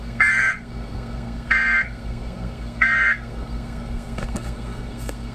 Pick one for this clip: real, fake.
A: fake